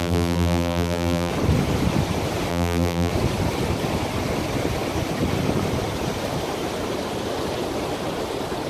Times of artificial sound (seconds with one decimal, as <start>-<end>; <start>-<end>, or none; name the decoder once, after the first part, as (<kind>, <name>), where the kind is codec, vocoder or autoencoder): 0.0-1.3 (vocoder, BigVGAN v2); 2.5-3.1